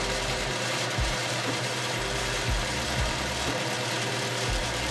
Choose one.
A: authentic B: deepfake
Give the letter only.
B